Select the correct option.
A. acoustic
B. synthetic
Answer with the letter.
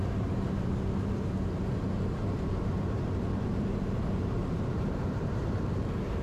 B